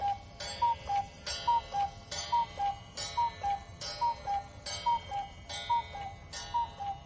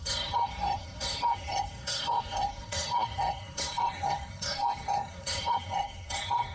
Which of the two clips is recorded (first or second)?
first